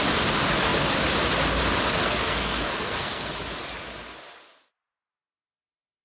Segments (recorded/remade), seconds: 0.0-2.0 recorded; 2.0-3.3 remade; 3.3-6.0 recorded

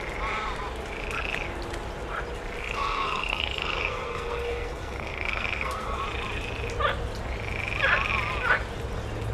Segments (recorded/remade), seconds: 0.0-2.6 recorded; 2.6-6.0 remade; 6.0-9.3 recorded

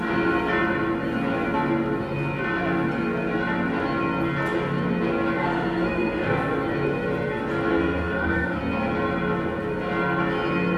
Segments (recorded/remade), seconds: 0.0-5.4 recorded; 5.4-6.5 remade; 6.5-7.7 recorded; 7.7-8.6 remade; 8.6-10.8 recorded

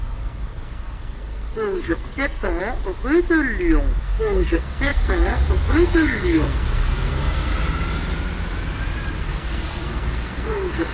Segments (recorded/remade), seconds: 0.0-2.6 remade; 2.6-4.0 recorded; 4.0-7.5 remade; 7.5-9.2 recorded; 9.2-10.9 remade

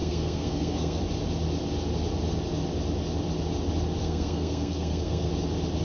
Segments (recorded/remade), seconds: 0.0-1.0 remade; 1.0-4.0 recorded; 4.0-5.3 remade; 5.3-5.8 recorded

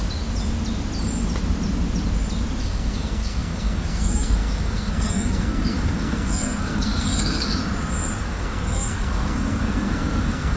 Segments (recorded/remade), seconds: 0.0-2.6 recorded; 2.6-7.6 remade; 7.6-8.2 recorded; 8.2-10.6 remade

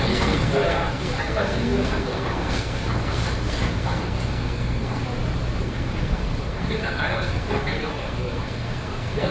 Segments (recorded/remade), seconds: 0.0-5.0 remade; 5.0-5.6 recorded; 5.6-9.3 remade